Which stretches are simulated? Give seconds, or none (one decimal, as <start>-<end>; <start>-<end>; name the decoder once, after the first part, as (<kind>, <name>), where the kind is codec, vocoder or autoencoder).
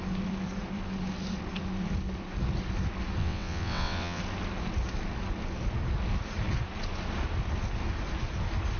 3.2-4.2 (vocoder, WaveNeXt)